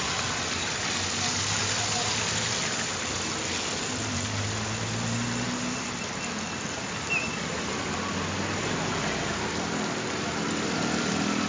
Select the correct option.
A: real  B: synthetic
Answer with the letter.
A